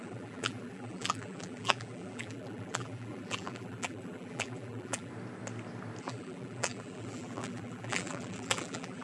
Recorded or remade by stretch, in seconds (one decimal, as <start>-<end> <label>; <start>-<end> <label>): 0.0-5.1 remade; 5.1-6.0 recorded; 6.0-9.0 remade